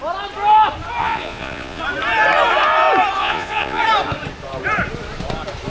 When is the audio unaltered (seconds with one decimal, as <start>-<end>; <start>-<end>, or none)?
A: 0.0-1.0; 1.8-3.2; 3.8-5.7